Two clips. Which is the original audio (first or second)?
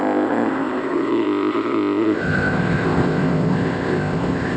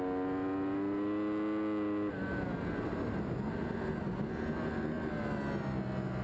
second